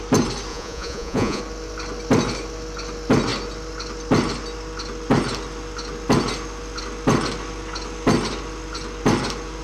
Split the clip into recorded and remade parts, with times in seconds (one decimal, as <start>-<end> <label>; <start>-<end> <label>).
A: 0.0-0.5 recorded; 0.5-1.4 remade; 1.4-9.6 recorded